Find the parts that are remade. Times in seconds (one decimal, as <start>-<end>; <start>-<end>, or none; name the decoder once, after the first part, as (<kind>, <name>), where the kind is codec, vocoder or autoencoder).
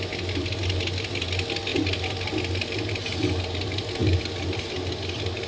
none